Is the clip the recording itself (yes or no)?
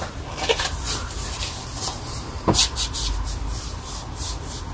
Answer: yes